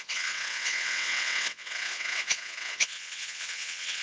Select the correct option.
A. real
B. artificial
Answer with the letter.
B